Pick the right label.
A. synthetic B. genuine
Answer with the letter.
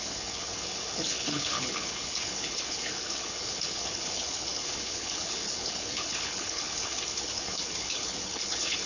A